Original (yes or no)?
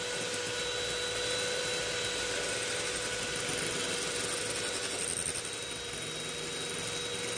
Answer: yes